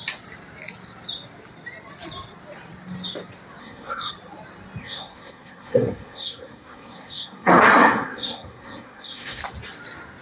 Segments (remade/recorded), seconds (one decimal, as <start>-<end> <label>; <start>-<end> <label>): 0.0-3.6 recorded; 3.6-4.1 remade; 4.1-4.8 recorded; 4.8-9.4 remade; 9.4-10.2 recorded